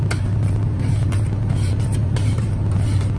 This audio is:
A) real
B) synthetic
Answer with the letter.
B